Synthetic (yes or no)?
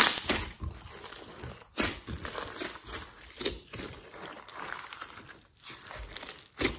yes